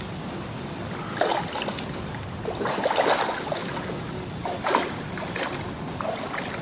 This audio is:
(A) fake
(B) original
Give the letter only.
B